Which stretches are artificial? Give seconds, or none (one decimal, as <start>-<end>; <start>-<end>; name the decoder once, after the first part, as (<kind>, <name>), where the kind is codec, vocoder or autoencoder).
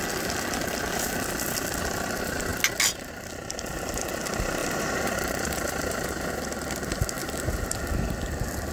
4.6-6.3 (vocoder, BigVGAN v2); 7.2-7.8